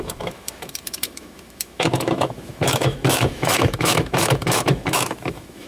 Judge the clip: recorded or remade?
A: remade